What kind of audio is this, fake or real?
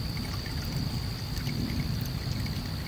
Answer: real